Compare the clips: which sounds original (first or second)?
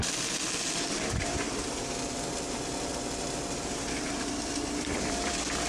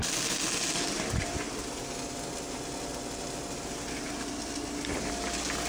second